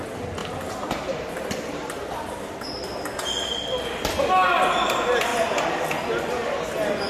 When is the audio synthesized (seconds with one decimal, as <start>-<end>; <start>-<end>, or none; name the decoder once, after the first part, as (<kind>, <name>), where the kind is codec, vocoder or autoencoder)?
0.4-2.9 (vocoder, BigVGAN v2)